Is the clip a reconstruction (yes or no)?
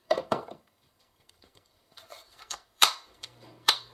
yes